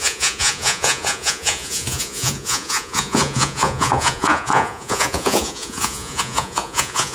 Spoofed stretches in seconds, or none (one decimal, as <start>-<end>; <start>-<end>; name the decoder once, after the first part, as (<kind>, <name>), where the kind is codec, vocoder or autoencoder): 0.0-7.1 (vocoder, Vocos)

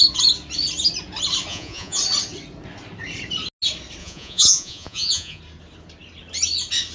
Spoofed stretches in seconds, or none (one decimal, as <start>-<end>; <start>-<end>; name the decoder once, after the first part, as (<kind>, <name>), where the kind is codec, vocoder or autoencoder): 1.5-2.0 (vocoder, Vocos); 4.0-5.4

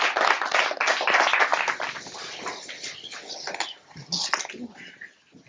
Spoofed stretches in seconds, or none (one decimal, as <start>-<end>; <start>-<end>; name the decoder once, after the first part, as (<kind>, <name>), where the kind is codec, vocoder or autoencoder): none

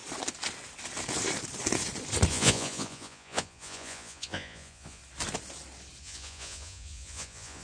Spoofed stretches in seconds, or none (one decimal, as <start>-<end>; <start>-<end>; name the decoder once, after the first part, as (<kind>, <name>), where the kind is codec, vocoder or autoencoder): 2.3-5.0 (vocoder, Vocos); 6.0-7.6

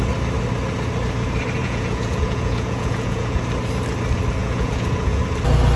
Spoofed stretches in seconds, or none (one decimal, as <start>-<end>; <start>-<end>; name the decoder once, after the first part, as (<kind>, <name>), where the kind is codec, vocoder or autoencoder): 1.6-3.4 (vocoder, Vocos); 4.4-5.2

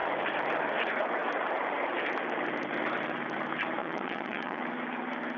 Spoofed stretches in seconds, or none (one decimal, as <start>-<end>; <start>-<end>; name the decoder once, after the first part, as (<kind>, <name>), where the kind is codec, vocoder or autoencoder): 3.8-4.6 (vocoder, Vocos)